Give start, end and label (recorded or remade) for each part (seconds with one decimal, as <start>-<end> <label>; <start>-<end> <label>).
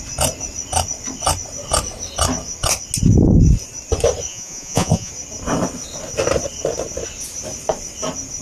0.0-4.3 recorded; 4.3-5.1 remade; 5.1-8.4 recorded